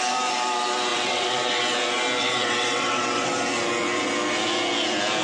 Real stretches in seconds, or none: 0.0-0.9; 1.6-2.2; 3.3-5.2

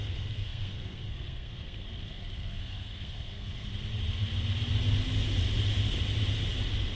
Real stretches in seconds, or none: 3.7-6.9